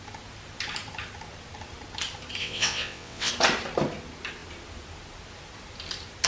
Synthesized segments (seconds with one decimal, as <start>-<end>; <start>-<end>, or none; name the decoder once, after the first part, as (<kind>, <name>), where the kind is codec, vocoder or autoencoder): 2.4-3.3 (vocoder, WaveNeXt)